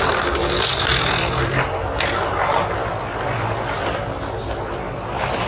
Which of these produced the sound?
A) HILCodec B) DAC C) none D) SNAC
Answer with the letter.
C